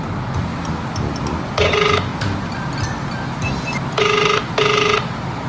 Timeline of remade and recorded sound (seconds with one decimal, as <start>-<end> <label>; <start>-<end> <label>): 0.0-5.5 recorded